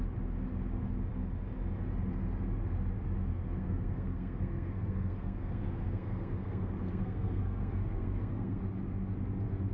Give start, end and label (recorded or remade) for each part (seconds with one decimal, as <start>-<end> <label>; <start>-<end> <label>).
0.0-3.3 recorded; 3.3-8.6 remade; 8.6-9.7 recorded